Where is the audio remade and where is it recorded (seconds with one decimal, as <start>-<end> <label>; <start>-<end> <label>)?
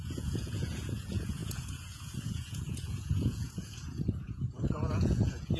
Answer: 0.0-5.6 remade